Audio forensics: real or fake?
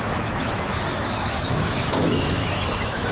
fake